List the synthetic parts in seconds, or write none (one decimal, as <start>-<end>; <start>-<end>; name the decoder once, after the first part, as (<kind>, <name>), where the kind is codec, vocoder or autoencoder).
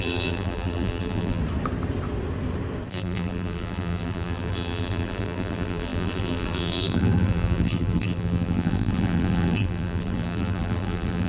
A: 0.0-1.4 (vocoder, BigVGAN v2); 2.9-11.3